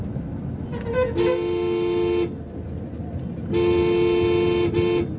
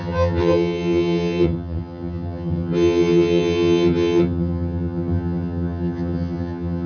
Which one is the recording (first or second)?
first